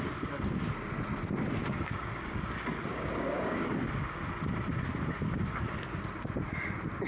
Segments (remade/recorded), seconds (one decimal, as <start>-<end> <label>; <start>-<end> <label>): 0.0-1.6 recorded; 1.6-2.4 remade; 2.4-2.9 recorded; 2.9-3.7 remade; 3.7-7.1 recorded